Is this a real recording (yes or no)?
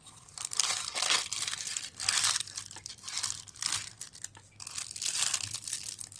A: yes